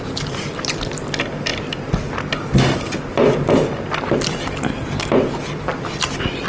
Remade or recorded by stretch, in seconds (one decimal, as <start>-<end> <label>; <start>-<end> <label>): 0.0-6.5 recorded